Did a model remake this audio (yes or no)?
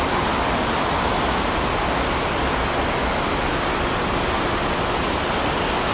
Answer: no